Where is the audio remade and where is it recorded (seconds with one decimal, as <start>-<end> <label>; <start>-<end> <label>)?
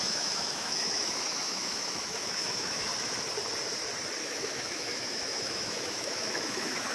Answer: 0.0-2.9 remade; 2.9-4.2 recorded; 4.2-6.9 remade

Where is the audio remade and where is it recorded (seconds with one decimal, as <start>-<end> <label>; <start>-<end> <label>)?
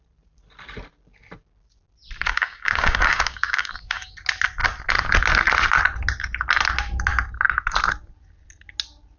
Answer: 0.0-2.3 recorded; 2.3-4.1 remade; 4.1-9.2 recorded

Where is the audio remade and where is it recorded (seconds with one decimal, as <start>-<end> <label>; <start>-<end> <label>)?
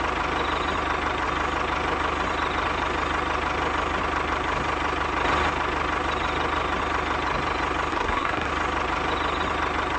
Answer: 0.0-7.9 recorded; 7.9-8.5 remade; 8.5-10.0 recorded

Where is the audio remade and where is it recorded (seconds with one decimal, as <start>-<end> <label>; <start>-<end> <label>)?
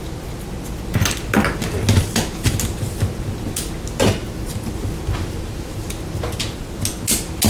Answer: 0.0-7.5 recorded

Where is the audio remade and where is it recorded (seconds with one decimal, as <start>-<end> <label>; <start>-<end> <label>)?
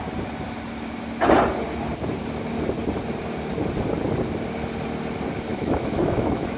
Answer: 0.0-5.5 recorded; 5.5-6.6 remade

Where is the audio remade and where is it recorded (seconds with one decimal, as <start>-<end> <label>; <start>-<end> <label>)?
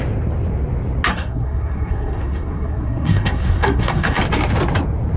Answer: 0.0-1.1 recorded; 1.1-4.2 remade; 4.2-5.2 recorded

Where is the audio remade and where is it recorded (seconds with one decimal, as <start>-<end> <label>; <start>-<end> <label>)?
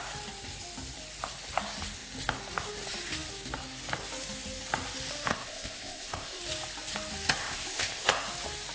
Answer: 0.0-5.3 recorded; 5.3-6.4 remade; 6.4-7.4 recorded; 7.4-8.1 remade; 8.1-8.7 recorded